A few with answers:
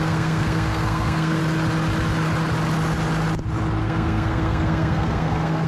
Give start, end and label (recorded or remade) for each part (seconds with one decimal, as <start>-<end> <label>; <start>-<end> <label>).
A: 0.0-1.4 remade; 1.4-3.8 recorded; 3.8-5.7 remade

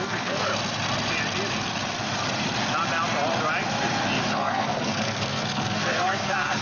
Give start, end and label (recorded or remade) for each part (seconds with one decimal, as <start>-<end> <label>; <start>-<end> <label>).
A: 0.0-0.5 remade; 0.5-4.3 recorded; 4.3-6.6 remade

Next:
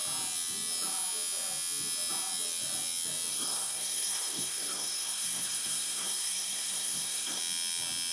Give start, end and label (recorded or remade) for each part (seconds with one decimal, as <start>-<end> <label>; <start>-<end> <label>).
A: 0.0-3.3 recorded; 3.3-7.4 remade; 7.4-8.1 recorded

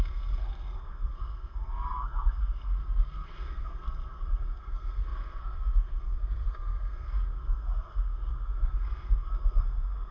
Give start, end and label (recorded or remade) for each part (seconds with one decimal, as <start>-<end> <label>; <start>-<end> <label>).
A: 0.0-10.1 remade

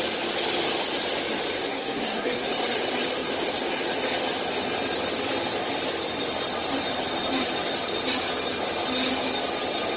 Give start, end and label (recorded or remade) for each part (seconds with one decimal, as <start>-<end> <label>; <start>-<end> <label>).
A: 0.0-1.6 recorded; 1.6-2.5 remade; 2.5-10.0 recorded

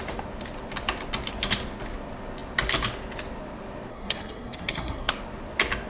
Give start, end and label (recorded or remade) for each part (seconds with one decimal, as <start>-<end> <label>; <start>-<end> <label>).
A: 0.0-3.9 recorded; 3.9-5.1 remade; 5.1-5.9 recorded

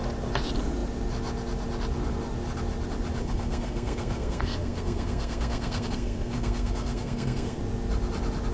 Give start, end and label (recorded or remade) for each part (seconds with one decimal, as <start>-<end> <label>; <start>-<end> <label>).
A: 0.0-3.2 recorded; 3.2-7.6 remade; 7.6-8.5 recorded

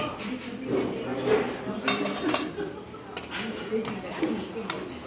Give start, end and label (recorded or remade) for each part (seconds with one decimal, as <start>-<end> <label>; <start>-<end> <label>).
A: 0.0-5.1 recorded